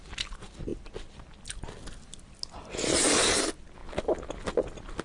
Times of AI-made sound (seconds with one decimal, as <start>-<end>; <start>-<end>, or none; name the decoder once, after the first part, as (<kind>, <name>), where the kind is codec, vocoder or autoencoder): none